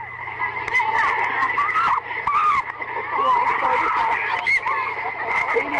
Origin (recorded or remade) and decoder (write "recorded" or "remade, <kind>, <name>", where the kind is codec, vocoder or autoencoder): recorded